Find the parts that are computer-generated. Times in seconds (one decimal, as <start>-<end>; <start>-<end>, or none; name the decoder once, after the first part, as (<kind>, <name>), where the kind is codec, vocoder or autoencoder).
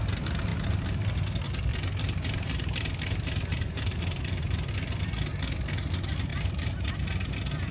0.5-1.1 (vocoder, BigVGAN v2); 1.7-4.7; 6.3-6.9